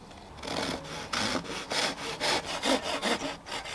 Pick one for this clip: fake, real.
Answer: real